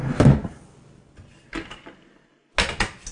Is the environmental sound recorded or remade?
recorded